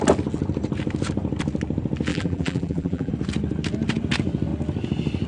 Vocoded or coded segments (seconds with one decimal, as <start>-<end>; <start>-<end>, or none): 2.1-3.1